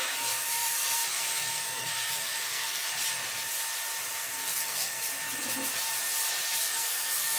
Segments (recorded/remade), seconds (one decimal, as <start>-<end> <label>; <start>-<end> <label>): 0.0-2.9 remade; 2.9-4.1 recorded; 4.1-5.1 remade; 5.1-6.6 recorded; 6.6-7.4 remade